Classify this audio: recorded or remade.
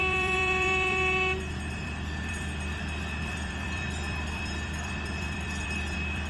remade